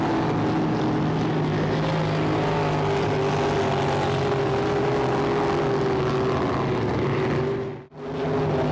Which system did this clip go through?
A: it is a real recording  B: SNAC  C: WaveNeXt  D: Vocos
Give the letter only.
A